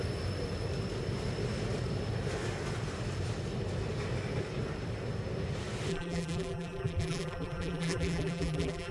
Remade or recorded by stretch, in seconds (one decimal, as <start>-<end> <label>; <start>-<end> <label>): 0.0-5.9 recorded; 5.9-8.9 remade